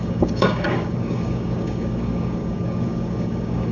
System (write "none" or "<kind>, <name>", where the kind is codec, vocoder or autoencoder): codec, DAC